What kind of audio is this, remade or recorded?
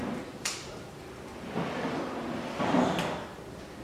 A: remade